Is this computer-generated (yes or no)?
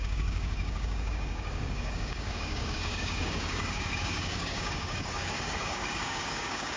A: yes